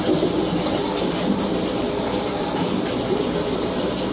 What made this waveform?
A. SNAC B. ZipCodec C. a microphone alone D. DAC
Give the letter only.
C